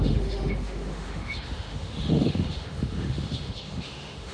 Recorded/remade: remade